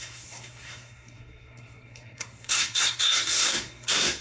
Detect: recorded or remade remade